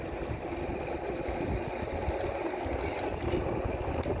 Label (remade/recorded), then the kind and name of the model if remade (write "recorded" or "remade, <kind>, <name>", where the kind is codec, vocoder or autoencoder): recorded